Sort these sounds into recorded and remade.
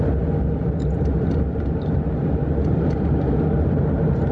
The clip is recorded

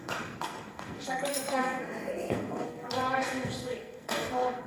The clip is remade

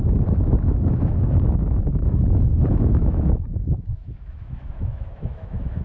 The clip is remade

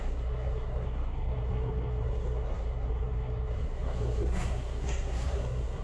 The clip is remade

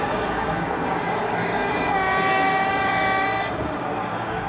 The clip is remade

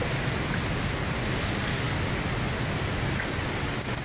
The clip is recorded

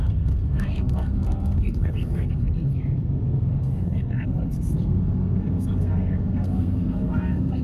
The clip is remade